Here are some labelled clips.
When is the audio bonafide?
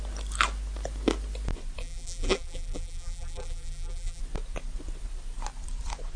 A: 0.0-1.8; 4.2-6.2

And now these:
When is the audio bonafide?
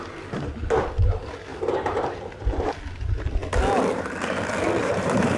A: 0.0-1.5; 2.0-4.8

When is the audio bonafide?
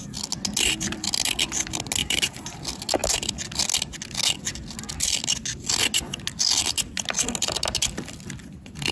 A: 0.0-2.0; 2.6-8.9